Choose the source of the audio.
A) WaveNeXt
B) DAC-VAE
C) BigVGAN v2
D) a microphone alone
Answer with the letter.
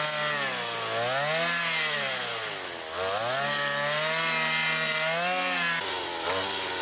D